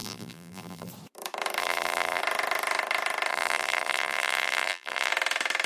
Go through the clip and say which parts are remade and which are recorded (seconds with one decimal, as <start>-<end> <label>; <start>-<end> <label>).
0.0-0.9 remade; 0.9-1.6 recorded; 1.6-2.2 remade; 2.2-3.3 recorded; 3.3-5.1 remade; 5.1-5.7 recorded

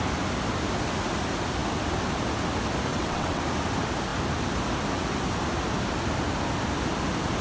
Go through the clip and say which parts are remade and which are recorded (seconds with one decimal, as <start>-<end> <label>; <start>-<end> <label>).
0.0-2.9 recorded; 2.9-3.4 remade; 3.4-7.4 recorded

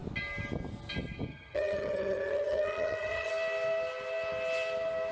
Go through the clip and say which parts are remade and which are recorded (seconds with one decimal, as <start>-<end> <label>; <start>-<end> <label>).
0.0-1.3 recorded; 1.3-3.3 remade; 3.3-5.1 recorded

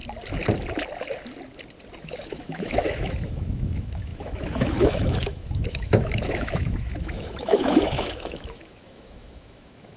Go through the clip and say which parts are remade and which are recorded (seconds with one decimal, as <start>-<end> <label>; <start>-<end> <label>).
0.0-2.0 recorded; 2.0-10.0 remade

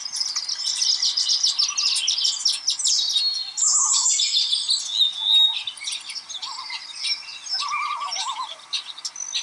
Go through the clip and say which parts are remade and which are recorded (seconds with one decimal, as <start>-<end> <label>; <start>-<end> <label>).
0.0-9.4 recorded

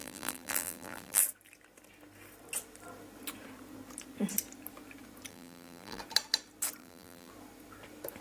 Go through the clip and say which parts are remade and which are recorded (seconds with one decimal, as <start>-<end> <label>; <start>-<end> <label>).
0.0-1.2 remade; 1.2-5.3 recorded; 5.3-6.0 remade; 6.0-6.8 recorded; 6.8-7.3 remade; 7.3-8.2 recorded